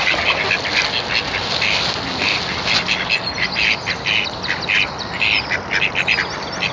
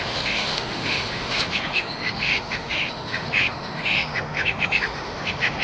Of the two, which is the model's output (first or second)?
second